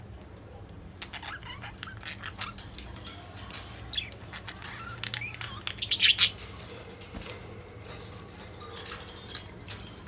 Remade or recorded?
recorded